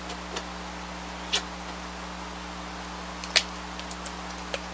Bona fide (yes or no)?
yes